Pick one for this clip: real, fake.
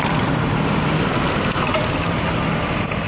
fake